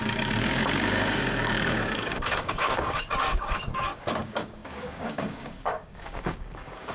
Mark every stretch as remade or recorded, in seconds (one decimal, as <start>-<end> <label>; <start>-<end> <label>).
0.0-6.9 remade